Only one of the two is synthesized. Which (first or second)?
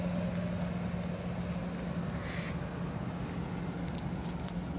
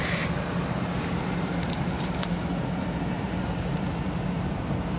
second